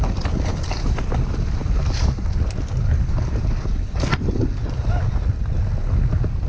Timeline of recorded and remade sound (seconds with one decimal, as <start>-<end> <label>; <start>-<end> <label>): 0.0-6.5 recorded